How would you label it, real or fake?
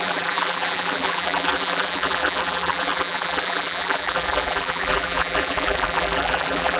fake